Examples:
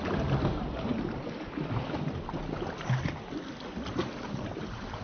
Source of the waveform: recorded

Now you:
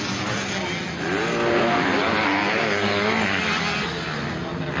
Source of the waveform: recorded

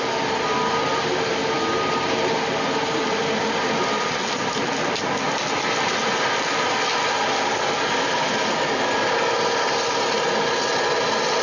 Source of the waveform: recorded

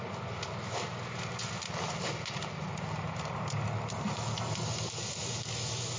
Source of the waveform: recorded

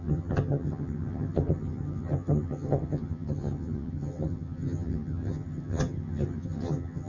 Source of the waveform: remade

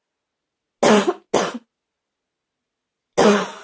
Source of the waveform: recorded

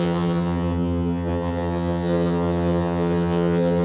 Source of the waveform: remade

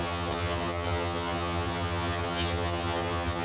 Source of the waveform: remade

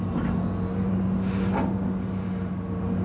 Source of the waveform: recorded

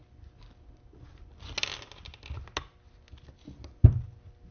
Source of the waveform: recorded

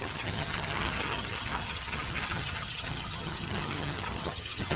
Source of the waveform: remade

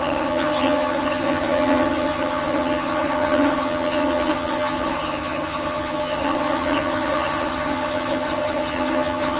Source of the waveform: remade